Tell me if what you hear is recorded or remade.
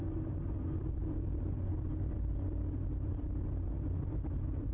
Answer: remade